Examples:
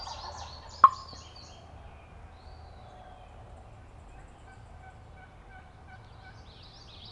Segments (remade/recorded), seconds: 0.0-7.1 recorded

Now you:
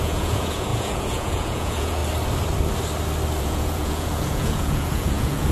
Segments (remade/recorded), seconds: 0.0-2.0 remade; 2.0-3.4 recorded; 3.4-5.5 remade

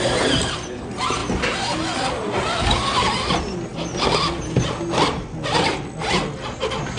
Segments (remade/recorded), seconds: 0.0-7.0 recorded

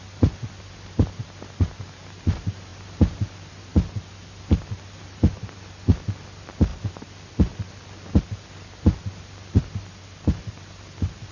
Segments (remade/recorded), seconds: 0.0-11.3 recorded

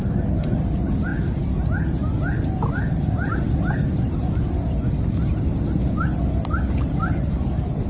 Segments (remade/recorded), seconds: 0.0-7.9 recorded

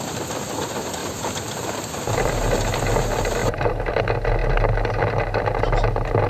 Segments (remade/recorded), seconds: 0.0-1.0 recorded; 1.0-2.3 remade; 2.3-3.4 recorded; 3.4-3.9 remade; 3.9-6.3 recorded

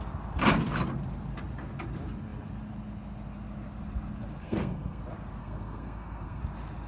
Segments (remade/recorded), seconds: 0.0-4.4 recorded; 4.4-5.0 remade; 5.0-5.4 recorded; 5.4-6.4 remade; 6.4-6.9 recorded